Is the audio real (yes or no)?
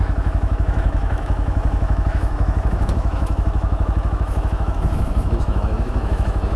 no